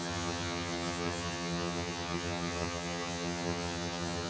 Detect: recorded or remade remade